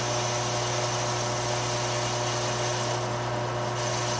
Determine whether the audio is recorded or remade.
recorded